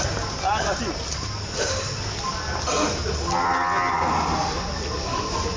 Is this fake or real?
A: real